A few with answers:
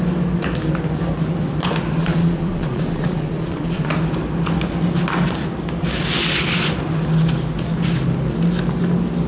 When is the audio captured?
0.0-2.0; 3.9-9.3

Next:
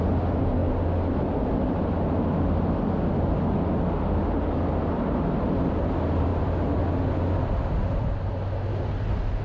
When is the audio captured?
0.0-9.4

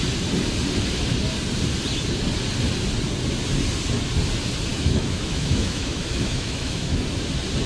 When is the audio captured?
0.0-4.7; 7.0-7.7

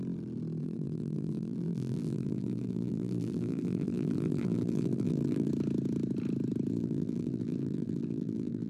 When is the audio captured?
0.0-0.6; 5.5-6.7

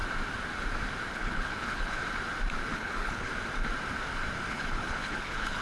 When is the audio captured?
0.0-1.1; 2.0-2.7; 3.3-4.5

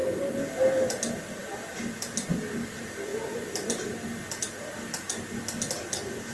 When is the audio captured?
0.0-3.1; 3.9-6.3

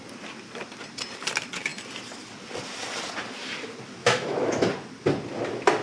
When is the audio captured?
0.0-4.0; 4.7-5.8